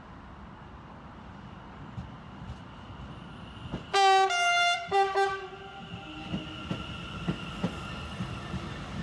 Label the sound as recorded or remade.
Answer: recorded